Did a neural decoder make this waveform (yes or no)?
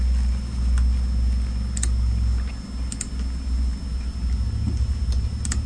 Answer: no